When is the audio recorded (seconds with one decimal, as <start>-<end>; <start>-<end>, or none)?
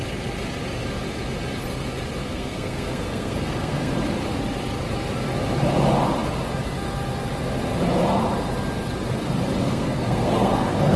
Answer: 0.0-2.2; 3.9-9.6